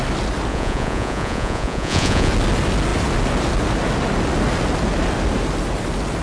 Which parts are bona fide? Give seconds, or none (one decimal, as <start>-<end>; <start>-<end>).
0.0-0.5; 2.3-6.2

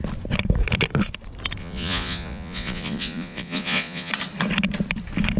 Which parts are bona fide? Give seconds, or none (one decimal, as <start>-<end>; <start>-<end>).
0.0-1.6; 4.1-5.4

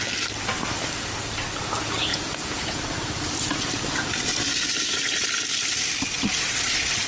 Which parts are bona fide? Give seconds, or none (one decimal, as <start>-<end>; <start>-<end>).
0.0-2.1; 2.8-7.1

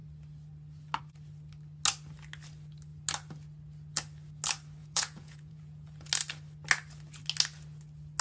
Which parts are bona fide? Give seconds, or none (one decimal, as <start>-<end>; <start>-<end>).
0.0-4.8; 6.1-8.2

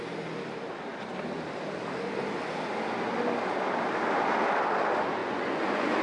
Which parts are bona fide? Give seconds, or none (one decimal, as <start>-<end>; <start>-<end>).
0.0-5.2

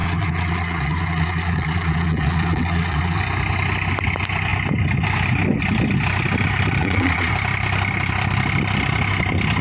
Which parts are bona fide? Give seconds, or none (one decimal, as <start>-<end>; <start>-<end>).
3.2-6.8; 7.3-9.6

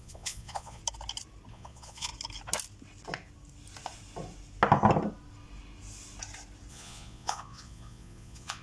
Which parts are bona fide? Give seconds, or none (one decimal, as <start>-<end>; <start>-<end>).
0.8-1.5; 2.1-6.7

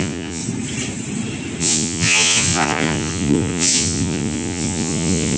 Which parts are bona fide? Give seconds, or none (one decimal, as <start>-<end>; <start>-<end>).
0.4-1.6